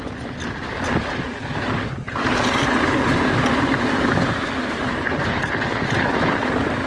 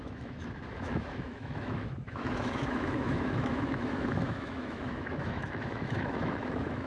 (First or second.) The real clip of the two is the first